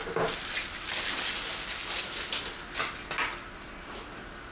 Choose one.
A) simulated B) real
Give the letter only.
B